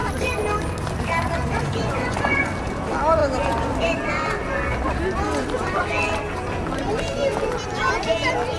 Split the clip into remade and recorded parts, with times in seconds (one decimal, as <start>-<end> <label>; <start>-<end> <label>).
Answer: 0.0-1.6 recorded; 1.6-2.5 remade; 2.5-8.6 recorded